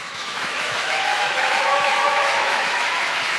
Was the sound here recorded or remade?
remade